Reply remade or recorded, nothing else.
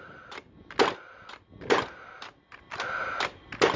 recorded